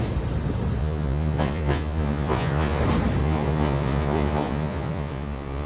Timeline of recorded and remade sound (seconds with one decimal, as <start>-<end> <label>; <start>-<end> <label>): 0.0-0.8 recorded; 0.8-2.8 remade; 2.8-3.2 recorded; 3.2-5.7 remade